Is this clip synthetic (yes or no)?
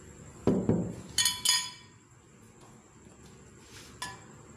no